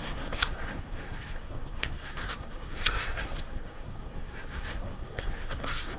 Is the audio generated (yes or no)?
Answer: yes